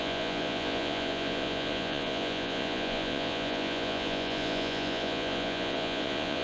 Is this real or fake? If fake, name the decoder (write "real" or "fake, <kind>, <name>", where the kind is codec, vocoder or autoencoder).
fake, vocoder, Vocos